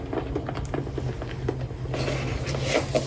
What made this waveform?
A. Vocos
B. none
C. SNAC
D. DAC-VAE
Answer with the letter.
B